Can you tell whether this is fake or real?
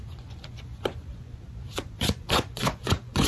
fake